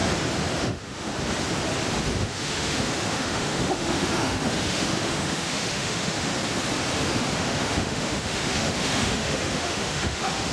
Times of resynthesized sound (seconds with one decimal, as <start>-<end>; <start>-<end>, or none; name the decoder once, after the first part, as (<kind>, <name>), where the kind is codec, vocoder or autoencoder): 0.6-1.1 (autoencoder, DAC-VAE); 2.2-6.3; 6.9-10.5